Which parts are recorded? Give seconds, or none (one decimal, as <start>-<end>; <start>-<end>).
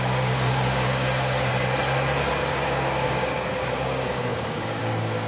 1.5-2.3